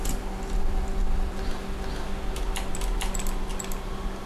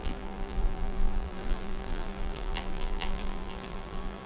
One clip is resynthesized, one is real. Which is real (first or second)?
first